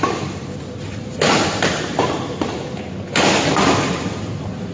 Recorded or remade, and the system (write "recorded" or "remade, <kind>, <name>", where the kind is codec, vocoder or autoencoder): recorded